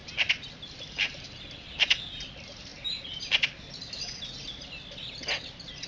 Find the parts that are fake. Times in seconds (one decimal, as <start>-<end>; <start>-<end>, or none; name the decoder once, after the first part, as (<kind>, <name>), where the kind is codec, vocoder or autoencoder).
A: none